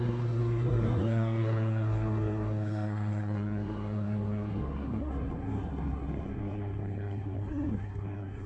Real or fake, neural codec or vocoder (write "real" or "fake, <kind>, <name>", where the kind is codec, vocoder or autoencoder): fake, codec, SNAC